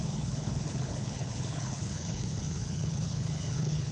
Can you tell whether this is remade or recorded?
remade